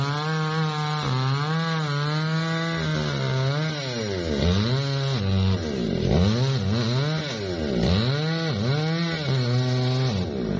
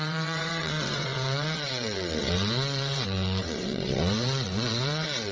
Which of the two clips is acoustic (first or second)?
first